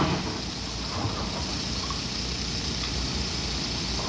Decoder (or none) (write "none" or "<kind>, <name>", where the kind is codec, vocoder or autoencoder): none